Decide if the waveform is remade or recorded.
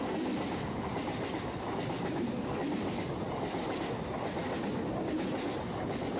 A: recorded